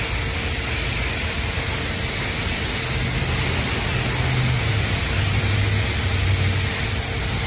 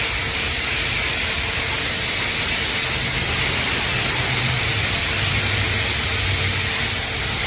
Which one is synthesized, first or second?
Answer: second